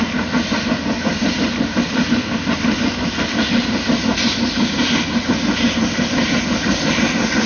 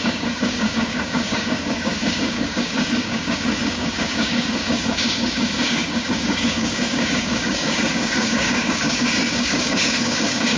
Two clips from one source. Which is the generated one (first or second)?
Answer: second